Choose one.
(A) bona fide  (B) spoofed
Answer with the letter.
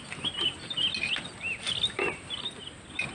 A